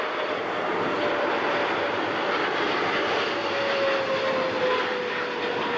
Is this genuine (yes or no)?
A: yes